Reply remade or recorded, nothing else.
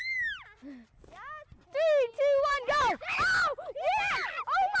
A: recorded